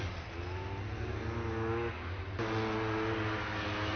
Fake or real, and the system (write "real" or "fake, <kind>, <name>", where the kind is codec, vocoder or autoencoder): real